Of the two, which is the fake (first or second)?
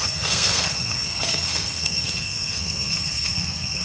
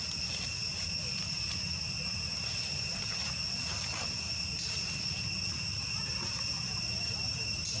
first